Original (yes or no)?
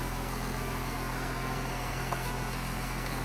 no